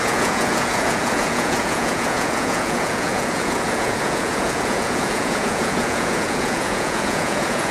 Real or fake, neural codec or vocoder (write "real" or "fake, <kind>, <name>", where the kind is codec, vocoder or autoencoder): fake, vocoder, Vocos